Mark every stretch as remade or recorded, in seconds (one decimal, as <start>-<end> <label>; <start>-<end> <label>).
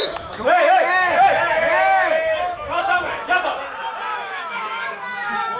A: 0.0-3.4 remade; 3.4-4.1 recorded; 4.1-5.6 remade